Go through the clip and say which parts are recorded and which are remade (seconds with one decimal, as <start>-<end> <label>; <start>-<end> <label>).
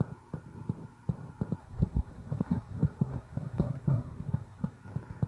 0.0-1.6 recorded; 1.6-4.8 remade; 4.8-5.3 recorded